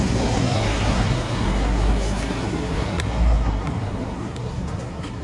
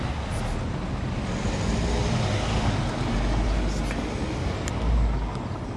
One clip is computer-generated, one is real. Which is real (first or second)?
second